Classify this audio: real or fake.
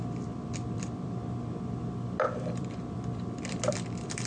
fake